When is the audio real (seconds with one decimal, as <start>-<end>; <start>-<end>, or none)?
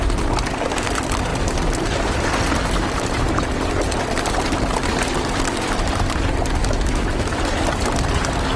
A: 0.0-6.6; 7.3-8.6